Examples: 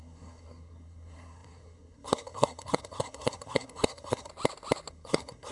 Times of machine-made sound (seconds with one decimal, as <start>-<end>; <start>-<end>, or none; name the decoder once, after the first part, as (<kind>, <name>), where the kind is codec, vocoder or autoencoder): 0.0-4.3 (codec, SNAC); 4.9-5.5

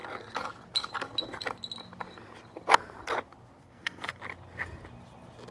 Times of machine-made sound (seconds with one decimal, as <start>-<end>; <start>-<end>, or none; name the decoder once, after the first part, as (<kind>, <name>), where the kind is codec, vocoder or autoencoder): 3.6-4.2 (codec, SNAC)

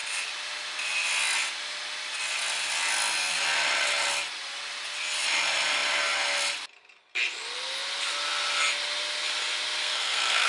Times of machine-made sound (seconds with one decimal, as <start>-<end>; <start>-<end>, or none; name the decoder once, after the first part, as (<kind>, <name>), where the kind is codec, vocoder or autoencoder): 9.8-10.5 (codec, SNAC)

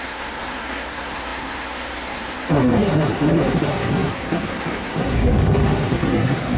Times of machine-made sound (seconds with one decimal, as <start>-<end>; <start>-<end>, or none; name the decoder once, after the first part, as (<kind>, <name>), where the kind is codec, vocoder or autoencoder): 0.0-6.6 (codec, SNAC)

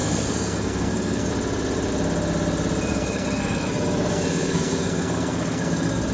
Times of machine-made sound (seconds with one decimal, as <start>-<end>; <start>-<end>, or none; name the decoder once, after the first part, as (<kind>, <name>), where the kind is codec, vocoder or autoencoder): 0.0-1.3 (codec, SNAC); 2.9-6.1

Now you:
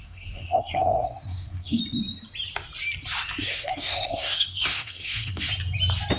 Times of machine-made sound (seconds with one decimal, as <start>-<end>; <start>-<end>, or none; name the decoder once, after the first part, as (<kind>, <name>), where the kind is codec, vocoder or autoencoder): 0.0-1.8 (codec, SNAC); 3.4-5.5